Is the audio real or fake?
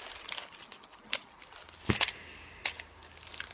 real